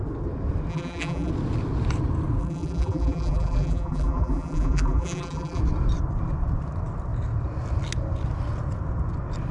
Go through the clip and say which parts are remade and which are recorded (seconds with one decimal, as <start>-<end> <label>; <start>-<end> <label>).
0.0-0.7 recorded; 0.7-1.3 remade; 1.3-2.4 recorded; 2.4-5.6 remade; 5.6-9.5 recorded